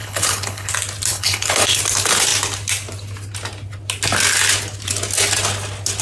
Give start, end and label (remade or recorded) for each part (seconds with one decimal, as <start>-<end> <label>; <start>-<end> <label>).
0.0-0.7 remade; 0.7-1.1 recorded; 1.1-1.8 remade; 1.8-6.0 recorded